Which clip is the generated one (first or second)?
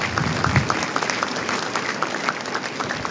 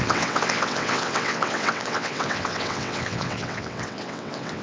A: second